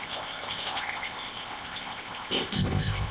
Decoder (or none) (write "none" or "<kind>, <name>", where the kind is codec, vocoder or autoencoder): codec, ZipCodec